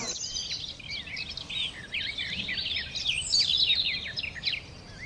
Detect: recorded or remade recorded